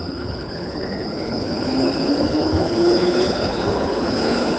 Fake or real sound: fake